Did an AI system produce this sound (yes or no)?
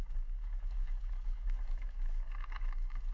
yes